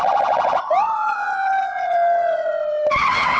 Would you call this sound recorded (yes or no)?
no